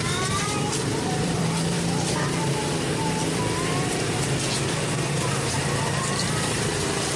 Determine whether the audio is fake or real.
fake